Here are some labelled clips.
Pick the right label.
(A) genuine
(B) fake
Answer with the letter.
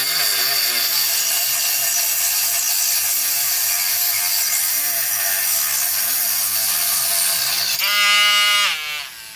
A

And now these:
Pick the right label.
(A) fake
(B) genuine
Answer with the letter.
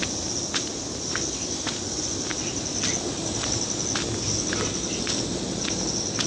B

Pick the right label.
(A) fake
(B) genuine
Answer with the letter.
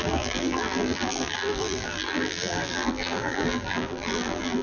A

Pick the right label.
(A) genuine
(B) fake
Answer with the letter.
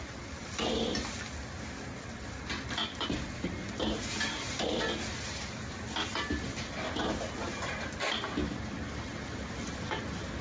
A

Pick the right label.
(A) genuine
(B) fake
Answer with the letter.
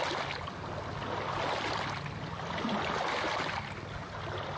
A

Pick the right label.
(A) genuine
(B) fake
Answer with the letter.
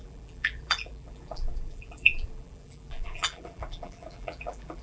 B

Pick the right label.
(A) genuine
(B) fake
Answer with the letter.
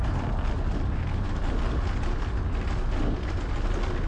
A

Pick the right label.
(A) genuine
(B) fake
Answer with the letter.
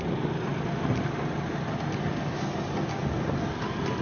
A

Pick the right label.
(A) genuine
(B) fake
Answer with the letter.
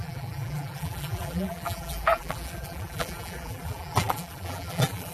B